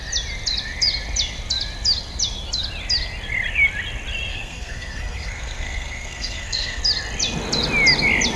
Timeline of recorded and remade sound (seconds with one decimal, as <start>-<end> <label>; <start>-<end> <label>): 0.0-4.3 recorded; 4.3-6.8 remade; 6.8-8.4 recorded